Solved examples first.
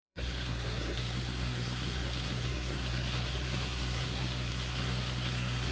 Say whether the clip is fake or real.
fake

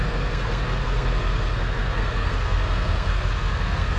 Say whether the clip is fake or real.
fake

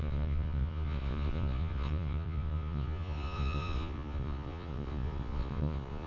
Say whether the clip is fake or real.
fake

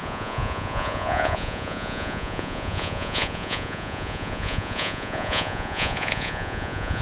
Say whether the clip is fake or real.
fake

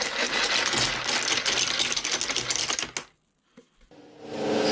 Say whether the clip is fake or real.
real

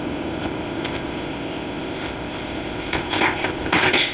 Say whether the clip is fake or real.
fake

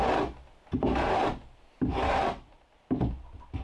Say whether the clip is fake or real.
real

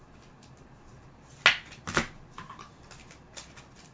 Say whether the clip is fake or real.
real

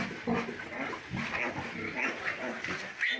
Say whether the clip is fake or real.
real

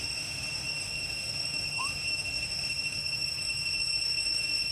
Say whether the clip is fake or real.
fake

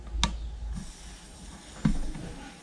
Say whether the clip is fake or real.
real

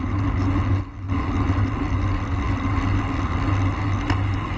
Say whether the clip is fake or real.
real